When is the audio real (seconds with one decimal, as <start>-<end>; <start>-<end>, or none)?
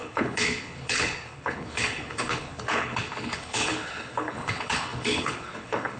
none